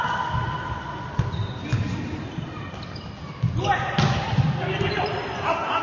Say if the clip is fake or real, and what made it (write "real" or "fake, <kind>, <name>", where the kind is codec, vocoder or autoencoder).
real